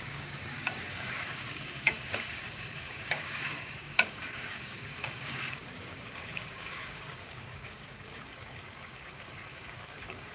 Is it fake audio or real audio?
fake